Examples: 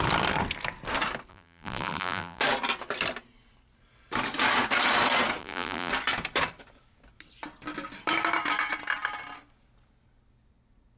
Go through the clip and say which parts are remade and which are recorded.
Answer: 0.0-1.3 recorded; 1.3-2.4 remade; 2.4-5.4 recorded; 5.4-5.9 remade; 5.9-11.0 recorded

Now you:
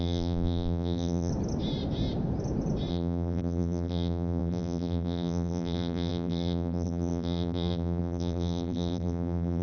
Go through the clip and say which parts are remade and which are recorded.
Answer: 0.0-1.3 remade; 1.3-2.9 recorded; 2.9-9.6 remade